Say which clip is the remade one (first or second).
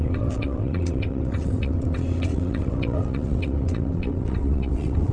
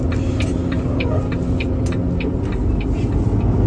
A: first